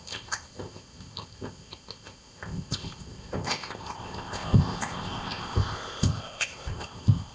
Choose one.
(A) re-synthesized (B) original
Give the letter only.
A